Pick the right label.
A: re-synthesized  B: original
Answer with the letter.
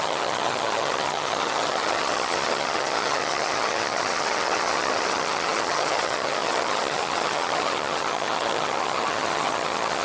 A